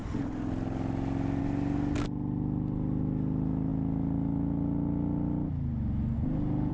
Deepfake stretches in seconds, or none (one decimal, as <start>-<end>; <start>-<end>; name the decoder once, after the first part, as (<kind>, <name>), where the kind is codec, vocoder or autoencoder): none